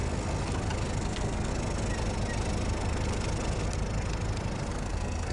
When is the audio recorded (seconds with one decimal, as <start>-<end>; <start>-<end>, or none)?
0.0-1.0; 1.5-4.7